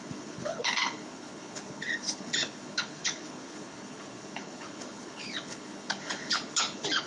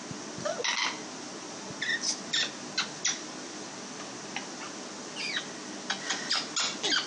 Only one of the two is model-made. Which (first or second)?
first